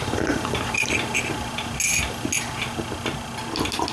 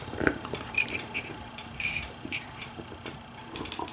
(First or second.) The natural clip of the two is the first